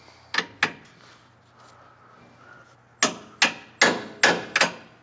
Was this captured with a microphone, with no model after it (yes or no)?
yes